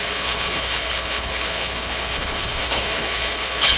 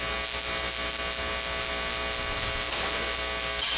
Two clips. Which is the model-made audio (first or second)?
first